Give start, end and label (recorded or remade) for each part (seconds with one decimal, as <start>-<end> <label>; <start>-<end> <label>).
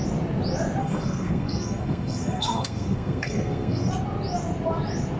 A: 0.0-0.8 recorded; 0.8-3.9 remade; 3.9-5.2 recorded